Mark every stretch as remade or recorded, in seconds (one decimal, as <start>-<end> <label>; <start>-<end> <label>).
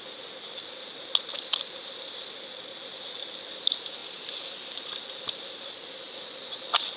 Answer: 0.0-7.0 recorded